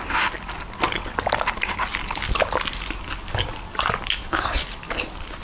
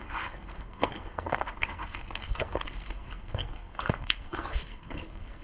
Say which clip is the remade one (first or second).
second